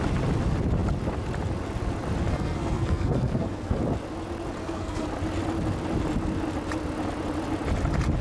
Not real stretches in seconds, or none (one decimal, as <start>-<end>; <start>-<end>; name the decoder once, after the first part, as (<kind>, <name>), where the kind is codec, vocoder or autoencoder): 2.3-3.8 (codec, SNAC); 4.6-5.1